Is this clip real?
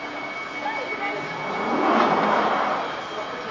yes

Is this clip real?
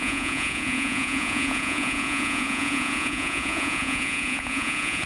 no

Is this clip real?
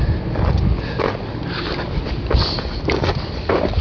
yes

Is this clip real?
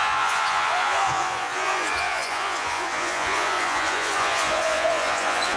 no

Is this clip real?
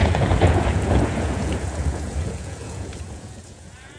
no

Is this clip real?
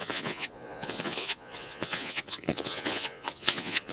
no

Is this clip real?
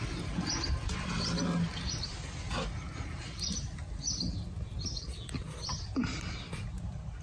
yes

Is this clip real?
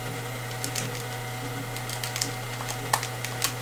yes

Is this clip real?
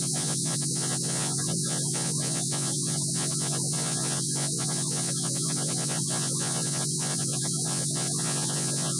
no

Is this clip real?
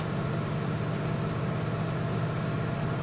yes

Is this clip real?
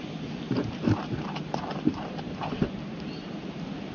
yes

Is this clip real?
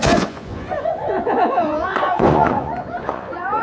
no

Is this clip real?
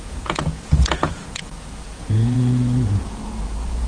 no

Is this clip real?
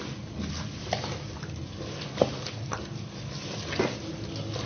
yes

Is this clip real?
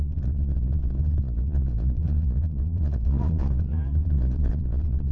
no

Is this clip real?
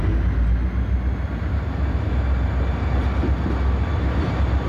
yes